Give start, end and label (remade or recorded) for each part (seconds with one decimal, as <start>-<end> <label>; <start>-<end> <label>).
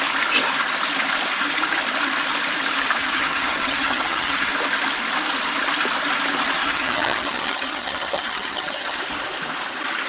0.0-3.0 recorded; 3.0-4.5 remade; 4.5-6.6 recorded; 6.6-9.0 remade; 9.0-10.1 recorded